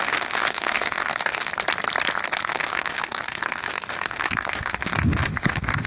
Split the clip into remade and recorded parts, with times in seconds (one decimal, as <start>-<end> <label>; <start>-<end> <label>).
0.0-1.5 remade; 1.5-2.4 recorded; 2.4-5.9 remade